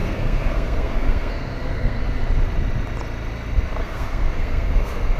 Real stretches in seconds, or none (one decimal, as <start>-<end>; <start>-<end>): 2.0-3.8